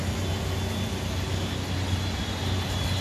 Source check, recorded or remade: recorded